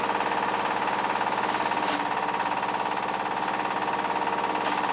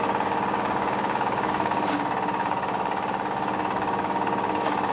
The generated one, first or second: second